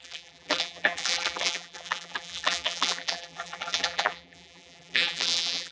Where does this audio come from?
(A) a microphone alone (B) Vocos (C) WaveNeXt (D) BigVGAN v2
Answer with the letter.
D